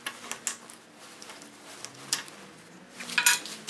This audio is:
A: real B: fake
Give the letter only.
A